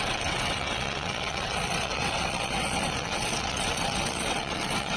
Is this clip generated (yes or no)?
yes